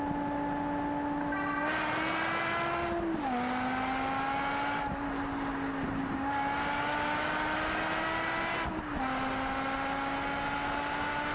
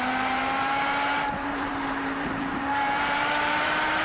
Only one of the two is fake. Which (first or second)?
second